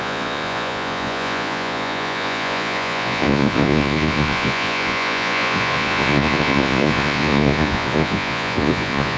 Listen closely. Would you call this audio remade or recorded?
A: remade